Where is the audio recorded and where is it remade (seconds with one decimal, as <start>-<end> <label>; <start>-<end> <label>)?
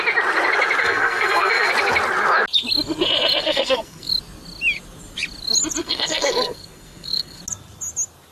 0.0-0.8 recorded; 0.8-1.7 remade; 1.7-3.4 recorded; 3.4-4.1 remade; 4.1-5.8 recorded; 5.8-7.4 remade; 7.4-8.3 recorded